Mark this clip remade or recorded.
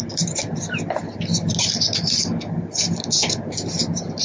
recorded